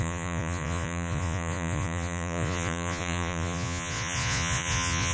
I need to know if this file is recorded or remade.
remade